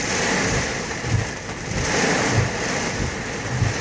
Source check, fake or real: real